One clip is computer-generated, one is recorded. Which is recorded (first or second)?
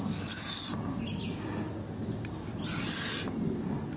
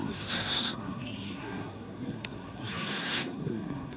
first